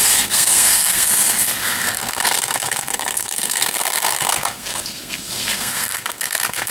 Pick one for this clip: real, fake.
fake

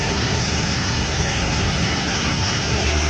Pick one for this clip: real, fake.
fake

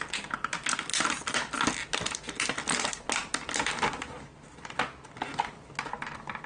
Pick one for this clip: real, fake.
real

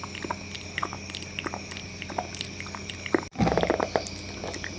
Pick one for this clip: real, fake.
real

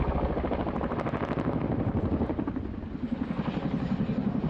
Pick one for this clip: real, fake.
real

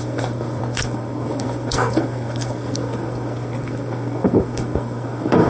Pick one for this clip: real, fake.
fake